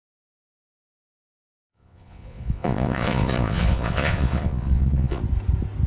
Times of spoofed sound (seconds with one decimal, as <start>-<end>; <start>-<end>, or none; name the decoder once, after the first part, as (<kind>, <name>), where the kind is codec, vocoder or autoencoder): 1.7-5.2 (vocoder, Vocos)